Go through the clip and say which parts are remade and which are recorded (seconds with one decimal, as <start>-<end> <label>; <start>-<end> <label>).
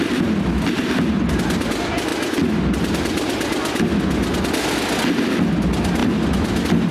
0.0-6.0 recorded; 6.0-6.9 remade